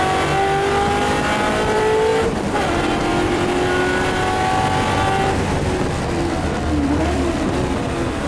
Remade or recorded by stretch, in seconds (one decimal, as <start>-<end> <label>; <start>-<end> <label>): 0.0-3.1 recorded; 3.1-3.8 remade; 3.8-8.3 recorded